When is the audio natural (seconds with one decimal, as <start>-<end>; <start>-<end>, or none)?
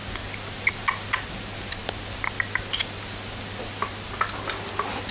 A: 0.0-5.1